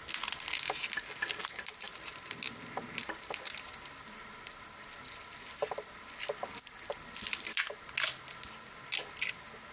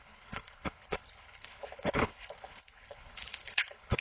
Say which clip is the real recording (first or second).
first